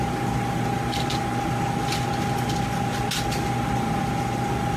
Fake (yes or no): no